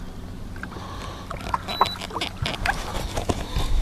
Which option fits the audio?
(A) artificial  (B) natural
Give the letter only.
B